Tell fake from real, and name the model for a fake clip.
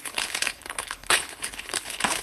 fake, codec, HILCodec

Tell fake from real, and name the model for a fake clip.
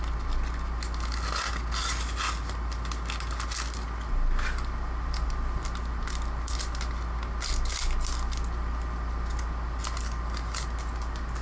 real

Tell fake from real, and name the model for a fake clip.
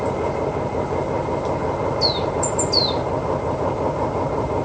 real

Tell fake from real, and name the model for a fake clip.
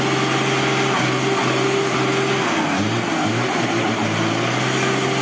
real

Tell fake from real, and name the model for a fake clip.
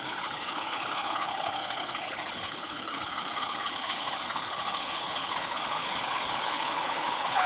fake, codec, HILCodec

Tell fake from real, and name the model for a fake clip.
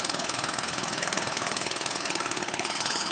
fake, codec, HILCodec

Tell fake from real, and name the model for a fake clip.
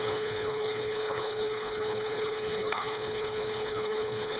fake, codec, HILCodec